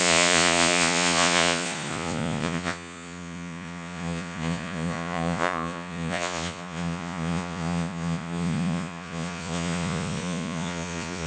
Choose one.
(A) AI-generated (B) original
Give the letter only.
A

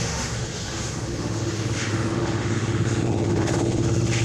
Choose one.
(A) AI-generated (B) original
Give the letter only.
A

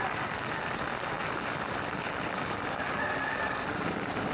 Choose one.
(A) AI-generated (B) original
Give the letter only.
B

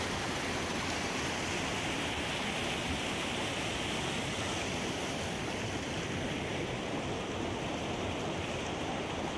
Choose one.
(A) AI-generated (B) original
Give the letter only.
B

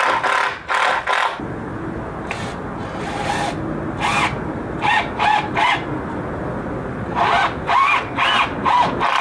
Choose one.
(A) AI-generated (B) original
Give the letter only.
B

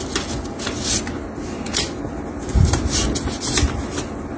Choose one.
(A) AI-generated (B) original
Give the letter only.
B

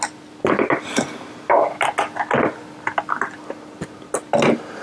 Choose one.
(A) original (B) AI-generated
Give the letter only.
A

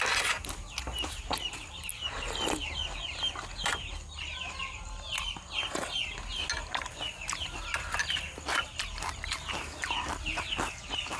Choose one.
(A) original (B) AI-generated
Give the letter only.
A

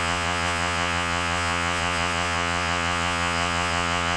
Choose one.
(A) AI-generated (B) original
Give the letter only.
A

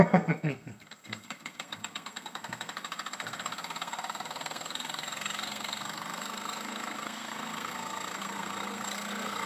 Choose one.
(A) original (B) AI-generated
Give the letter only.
B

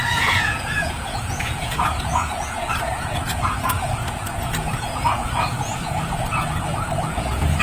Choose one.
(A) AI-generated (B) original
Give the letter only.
A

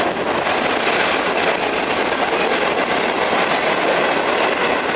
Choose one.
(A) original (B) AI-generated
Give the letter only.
A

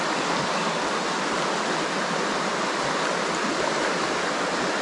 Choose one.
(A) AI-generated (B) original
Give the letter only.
B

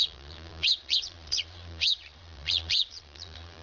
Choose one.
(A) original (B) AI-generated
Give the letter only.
B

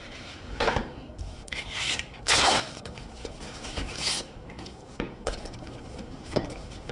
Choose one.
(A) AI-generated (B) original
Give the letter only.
A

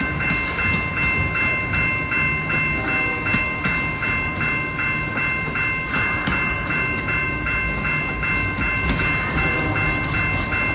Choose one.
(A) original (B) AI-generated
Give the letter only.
A